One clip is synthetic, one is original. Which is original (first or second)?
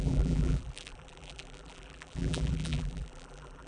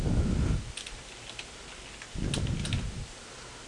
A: second